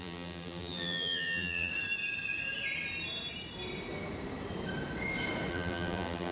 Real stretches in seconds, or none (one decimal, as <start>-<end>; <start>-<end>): 1.7-5.5